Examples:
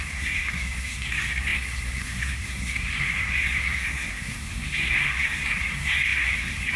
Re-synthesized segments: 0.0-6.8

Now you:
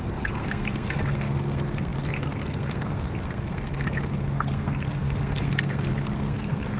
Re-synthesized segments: 0.0-6.8

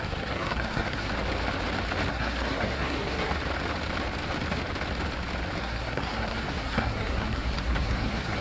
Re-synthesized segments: 0.0-1.1; 2.1-3.3; 5.6-8.4

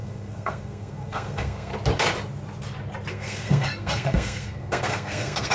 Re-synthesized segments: 0.0-1.7; 3.1-5.5

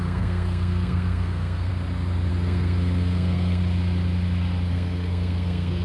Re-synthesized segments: 0.0-1.7; 2.3-3.6; 4.7-5.8

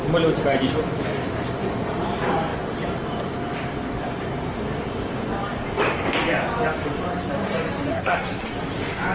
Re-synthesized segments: 7.9-8.5

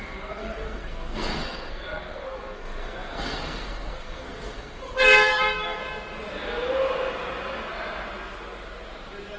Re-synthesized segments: 0.0-5.8

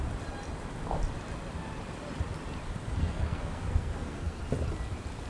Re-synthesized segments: 3.0-4.4